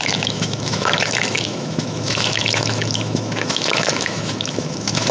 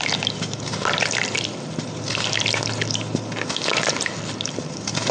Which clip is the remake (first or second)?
first